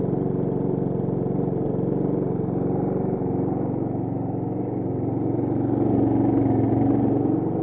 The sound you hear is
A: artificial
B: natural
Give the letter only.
B